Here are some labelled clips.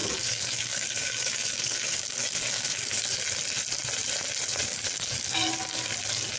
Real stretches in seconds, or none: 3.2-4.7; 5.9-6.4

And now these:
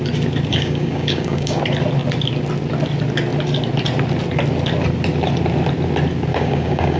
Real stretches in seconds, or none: 0.0-0.5; 1.6-6.3

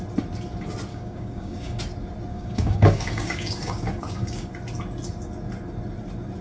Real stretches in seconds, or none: 0.0-0.9; 1.8-2.3; 4.5-6.4

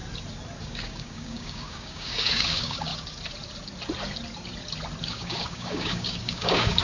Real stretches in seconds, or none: 0.0-0.6; 2.9-5.0

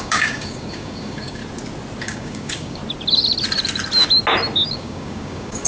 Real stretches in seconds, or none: 1.4-2.0; 2.8-4.7

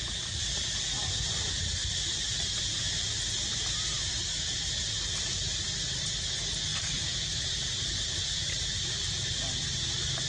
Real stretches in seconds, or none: 0.0-10.3

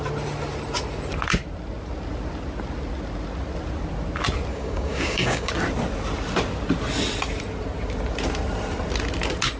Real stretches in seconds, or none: 0.0-4.5; 5.5-9.6